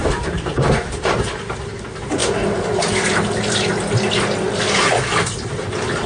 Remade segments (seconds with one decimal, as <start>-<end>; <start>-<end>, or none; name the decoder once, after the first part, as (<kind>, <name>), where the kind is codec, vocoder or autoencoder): 0.0-1.3 (vocoder, BigVGAN v2); 2.2-2.7